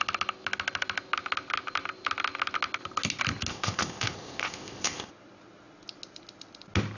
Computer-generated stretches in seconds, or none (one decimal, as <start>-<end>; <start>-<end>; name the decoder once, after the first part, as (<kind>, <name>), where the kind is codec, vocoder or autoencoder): 3.5-5.1 (codec, ZipCodec)